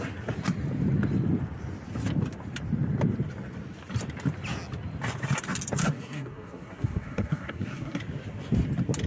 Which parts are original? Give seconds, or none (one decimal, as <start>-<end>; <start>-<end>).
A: 0.0-5.8; 8.0-9.1